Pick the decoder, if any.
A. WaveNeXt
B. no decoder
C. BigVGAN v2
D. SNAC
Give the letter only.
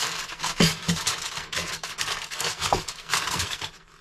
D